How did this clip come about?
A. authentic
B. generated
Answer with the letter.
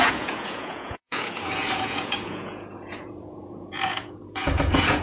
B